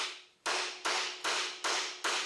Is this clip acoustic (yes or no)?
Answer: yes